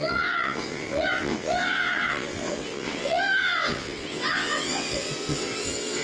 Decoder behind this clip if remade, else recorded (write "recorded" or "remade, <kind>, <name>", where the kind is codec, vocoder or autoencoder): remade, vocoder, WaveNeXt